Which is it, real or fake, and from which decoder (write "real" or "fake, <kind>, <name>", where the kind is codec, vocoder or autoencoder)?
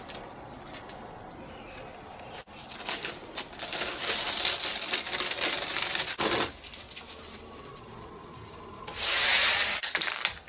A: real